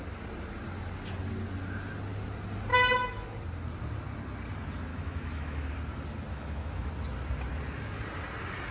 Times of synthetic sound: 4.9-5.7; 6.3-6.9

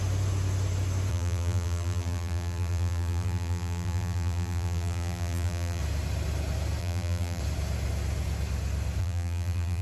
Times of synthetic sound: 1.1-5.8; 6.8-7.4; 9.0-9.8

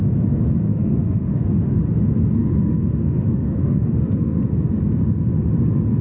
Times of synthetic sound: 0.7-1.8; 2.4-4.4